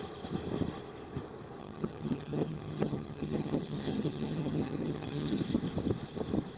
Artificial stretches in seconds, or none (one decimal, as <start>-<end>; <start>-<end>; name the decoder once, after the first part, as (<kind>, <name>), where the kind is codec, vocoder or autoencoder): 1.6-5.4 (vocoder, HiFi-GAN)